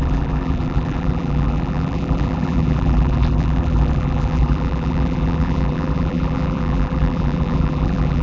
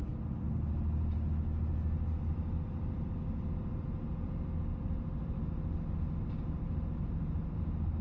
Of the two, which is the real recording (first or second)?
second